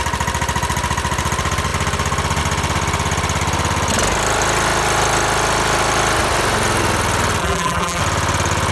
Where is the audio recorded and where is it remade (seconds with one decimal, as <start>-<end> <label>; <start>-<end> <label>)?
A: 0.0-7.4 recorded; 7.4-8.0 remade; 8.0-8.7 recorded

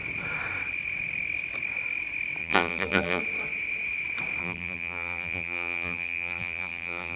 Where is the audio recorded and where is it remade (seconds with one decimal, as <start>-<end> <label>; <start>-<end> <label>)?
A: 0.0-2.4 recorded; 2.4-3.2 remade; 3.2-4.4 recorded; 4.4-7.2 remade

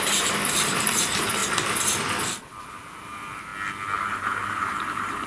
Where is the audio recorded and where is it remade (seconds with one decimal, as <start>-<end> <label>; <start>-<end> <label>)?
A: 0.0-1.4 remade; 1.4-2.6 recorded; 2.6-3.5 remade; 3.5-4.0 recorded; 4.0-5.3 remade

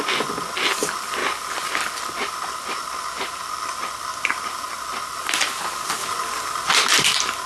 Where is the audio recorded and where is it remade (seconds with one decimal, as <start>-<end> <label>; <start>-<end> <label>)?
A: 0.0-2.2 recorded; 2.2-4.5 remade; 4.5-7.5 recorded

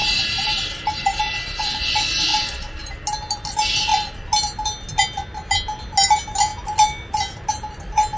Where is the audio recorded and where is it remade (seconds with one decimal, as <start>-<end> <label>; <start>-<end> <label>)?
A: 0.0-1.2 remade; 1.2-2.3 recorded; 2.3-2.9 remade; 2.9-8.2 recorded